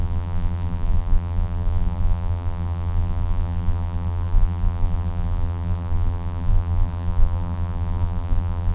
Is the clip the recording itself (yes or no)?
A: no